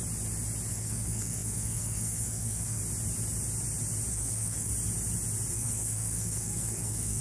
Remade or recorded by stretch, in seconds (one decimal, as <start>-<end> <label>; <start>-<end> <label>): 0.0-0.7 recorded; 0.7-2.8 remade; 2.8-4.1 recorded; 4.1-4.7 remade; 4.7-5.5 recorded; 5.5-7.2 remade